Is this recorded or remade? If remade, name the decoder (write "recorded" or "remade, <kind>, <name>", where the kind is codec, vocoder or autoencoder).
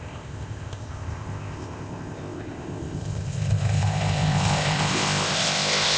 remade, codec, ZipCodec